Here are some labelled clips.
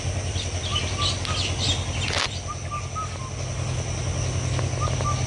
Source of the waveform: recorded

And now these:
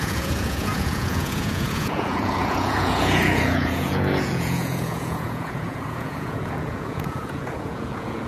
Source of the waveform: remade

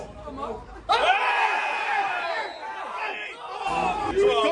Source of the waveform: recorded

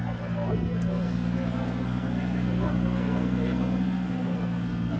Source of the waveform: remade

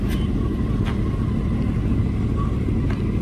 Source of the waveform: recorded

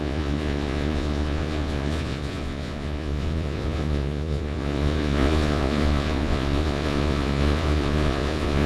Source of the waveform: remade